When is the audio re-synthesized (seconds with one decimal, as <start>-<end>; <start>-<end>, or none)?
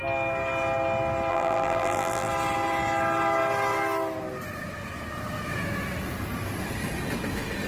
1.3-2.3